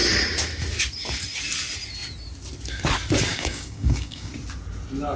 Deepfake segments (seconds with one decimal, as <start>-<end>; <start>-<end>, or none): 3.3-4.3

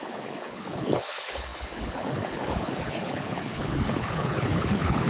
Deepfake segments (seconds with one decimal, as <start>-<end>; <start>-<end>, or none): 0.0-5.1

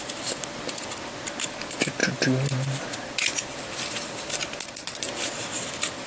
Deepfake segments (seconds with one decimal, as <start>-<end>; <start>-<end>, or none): none

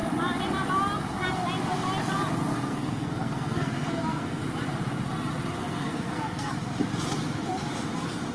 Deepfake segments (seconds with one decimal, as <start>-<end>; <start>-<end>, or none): 2.5-4.4; 5.6-6.5

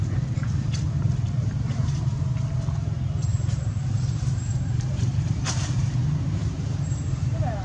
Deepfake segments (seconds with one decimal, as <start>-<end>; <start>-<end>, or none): 1.4-2.4; 3.3-5.9; 6.4-7.6

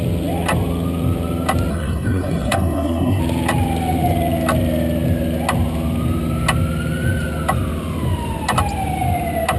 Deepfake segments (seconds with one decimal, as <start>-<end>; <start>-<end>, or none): 1.7-3.2

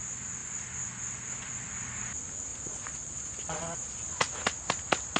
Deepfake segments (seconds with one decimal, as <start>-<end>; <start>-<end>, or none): 2.5-4.1